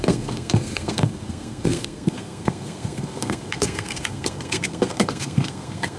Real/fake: fake